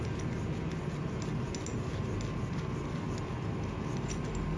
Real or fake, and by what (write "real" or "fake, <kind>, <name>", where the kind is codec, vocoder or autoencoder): real